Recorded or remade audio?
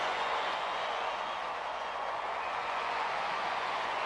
remade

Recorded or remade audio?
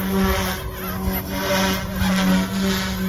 recorded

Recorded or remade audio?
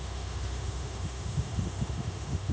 remade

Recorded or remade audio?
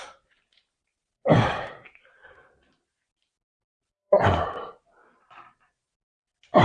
remade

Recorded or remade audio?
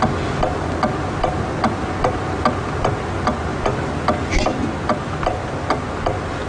recorded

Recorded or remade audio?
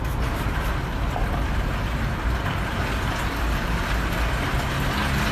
recorded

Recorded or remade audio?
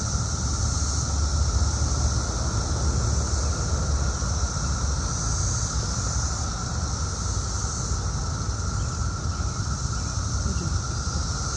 recorded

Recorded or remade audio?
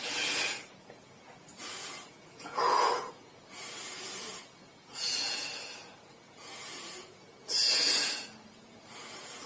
remade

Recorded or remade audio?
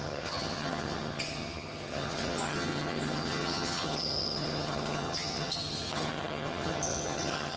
remade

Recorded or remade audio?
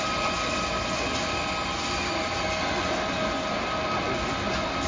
recorded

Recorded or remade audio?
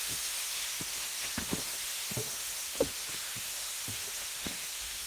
remade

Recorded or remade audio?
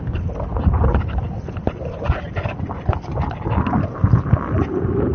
recorded